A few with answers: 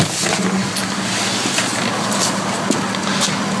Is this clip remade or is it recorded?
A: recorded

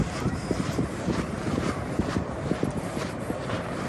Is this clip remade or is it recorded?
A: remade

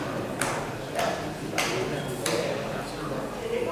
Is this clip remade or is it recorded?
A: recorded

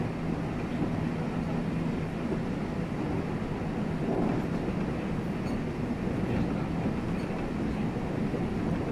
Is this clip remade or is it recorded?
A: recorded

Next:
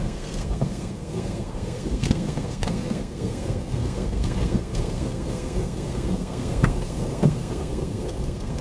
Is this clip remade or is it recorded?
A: remade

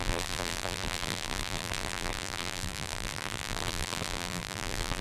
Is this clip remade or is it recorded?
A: remade